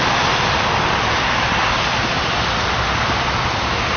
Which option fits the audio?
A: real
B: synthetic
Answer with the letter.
A